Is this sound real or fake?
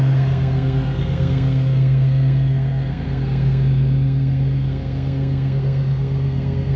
fake